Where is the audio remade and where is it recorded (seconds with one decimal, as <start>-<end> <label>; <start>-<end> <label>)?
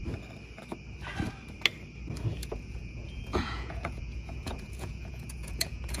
0.0-2.3 recorded; 2.3-6.0 remade